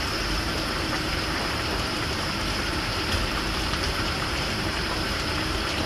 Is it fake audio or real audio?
fake